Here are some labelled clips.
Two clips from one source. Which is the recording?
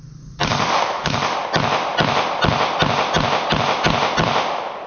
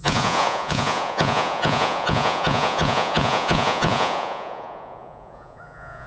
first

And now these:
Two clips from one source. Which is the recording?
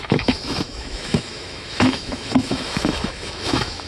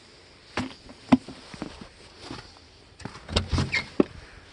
second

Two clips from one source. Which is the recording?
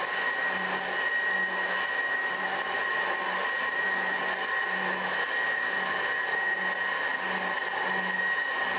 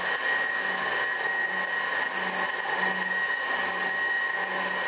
second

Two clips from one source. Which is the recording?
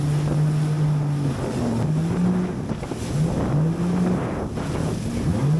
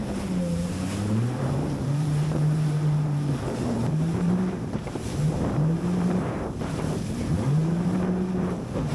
first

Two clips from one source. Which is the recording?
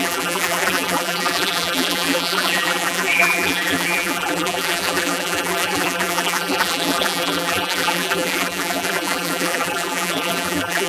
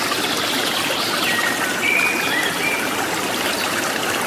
second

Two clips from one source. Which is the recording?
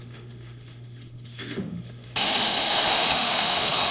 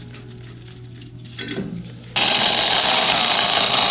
second